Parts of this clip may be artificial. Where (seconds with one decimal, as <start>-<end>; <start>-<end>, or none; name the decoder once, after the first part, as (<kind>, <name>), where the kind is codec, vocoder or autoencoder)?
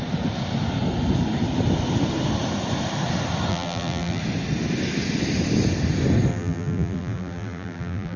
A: 3.5-4.2 (vocoder, BigVGAN v2); 6.3-8.2